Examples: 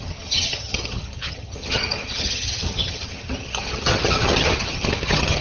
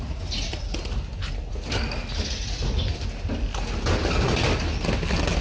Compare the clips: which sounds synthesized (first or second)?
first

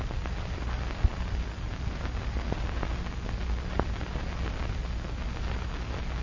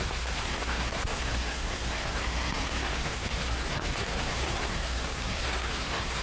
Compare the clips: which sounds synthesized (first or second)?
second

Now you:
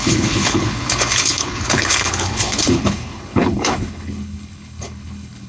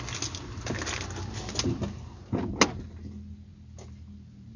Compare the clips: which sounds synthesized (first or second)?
first